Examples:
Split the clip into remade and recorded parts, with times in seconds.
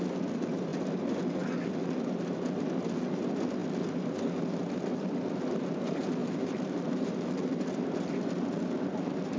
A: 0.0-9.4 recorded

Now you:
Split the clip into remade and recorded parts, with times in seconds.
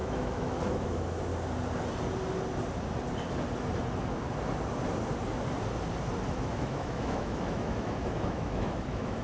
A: 0.0-1.3 remade; 1.3-6.3 recorded; 6.3-9.2 remade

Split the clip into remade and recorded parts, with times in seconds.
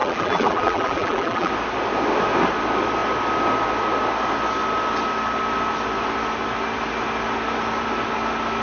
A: 0.0-1.5 remade; 1.5-8.6 recorded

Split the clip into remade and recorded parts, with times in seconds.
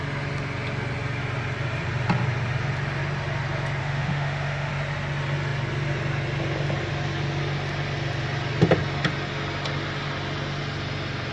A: 0.0-3.8 recorded; 3.8-4.7 remade; 4.7-11.3 recorded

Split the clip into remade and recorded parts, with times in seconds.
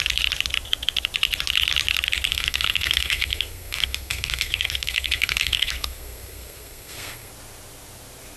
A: 0.0-2.3 recorded; 2.3-7.3 remade; 7.3-8.4 recorded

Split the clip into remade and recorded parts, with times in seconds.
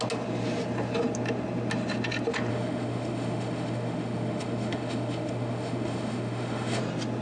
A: 0.0-2.5 recorded; 2.5-6.8 remade; 6.8-7.2 recorded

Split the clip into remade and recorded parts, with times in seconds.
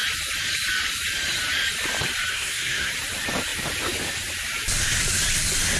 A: 0.0-2.3 recorded; 2.3-2.9 remade; 2.9-5.8 recorded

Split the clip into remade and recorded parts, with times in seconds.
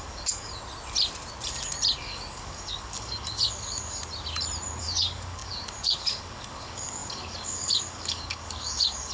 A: 0.0-0.5 remade; 0.5-2.0 recorded; 2.0-4.0 remade; 4.0-4.8 recorded; 4.8-9.1 remade